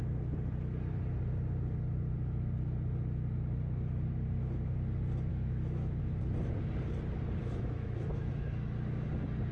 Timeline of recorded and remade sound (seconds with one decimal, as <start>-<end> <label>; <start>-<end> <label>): 0.0-5.3 recorded; 5.3-6.0 remade; 6.0-7.4 recorded; 7.4-9.1 remade; 9.1-9.5 recorded